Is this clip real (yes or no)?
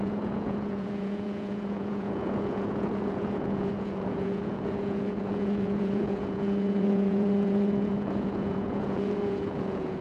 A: no